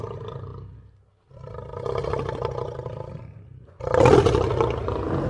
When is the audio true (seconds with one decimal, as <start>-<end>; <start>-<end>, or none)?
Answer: 0.0-5.3